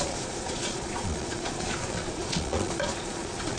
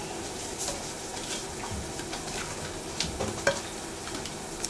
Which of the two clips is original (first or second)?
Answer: second